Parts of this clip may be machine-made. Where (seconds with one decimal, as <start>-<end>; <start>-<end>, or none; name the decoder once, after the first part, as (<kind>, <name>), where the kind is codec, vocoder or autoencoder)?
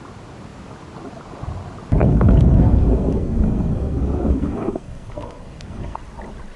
2.0-6.0 (codec, SNAC)